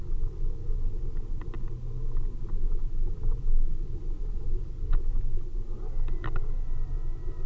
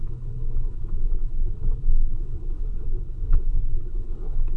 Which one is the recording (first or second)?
first